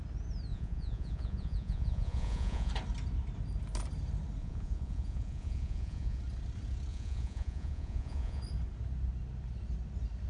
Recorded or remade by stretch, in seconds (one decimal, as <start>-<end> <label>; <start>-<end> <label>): 0.0-0.5 recorded; 0.5-2.7 remade; 2.7-4.4 recorded; 4.4-6.2 remade; 6.2-6.9 recorded; 6.9-8.4 remade; 8.4-10.3 recorded